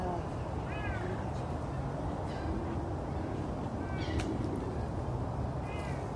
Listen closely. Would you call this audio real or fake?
fake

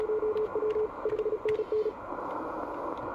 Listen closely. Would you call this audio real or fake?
real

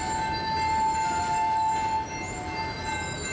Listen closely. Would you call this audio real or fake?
real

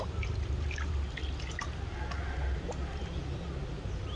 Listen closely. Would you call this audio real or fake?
real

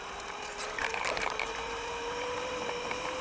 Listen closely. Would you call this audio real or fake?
fake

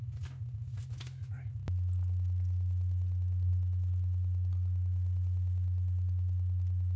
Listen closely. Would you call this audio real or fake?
real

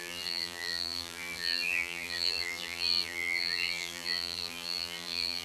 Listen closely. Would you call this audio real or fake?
fake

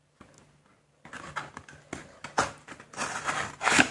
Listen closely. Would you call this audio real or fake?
real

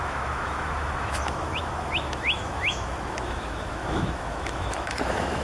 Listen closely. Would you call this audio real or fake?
fake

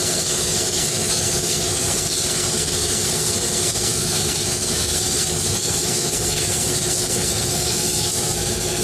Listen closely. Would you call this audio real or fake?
fake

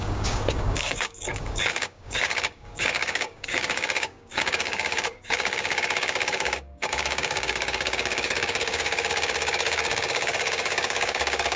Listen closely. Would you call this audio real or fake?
fake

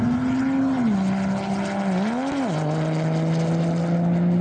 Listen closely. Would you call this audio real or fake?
real